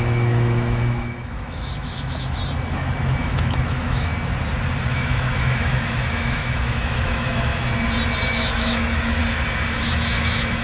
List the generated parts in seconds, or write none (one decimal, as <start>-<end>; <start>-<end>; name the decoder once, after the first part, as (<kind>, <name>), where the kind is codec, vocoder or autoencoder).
0.0-2.4 (autoencoder, DAC-VAE); 3.2-4.1; 4.9-7.5; 8.3-9.2; 9.8-10.6